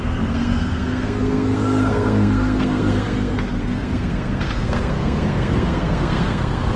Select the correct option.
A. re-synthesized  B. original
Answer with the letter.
A